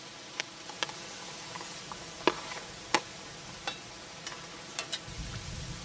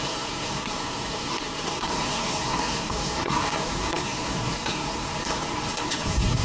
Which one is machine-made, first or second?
second